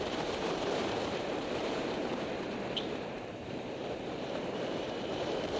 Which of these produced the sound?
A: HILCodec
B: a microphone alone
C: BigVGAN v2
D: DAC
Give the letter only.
C